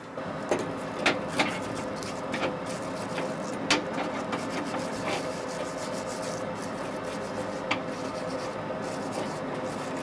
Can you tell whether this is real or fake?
real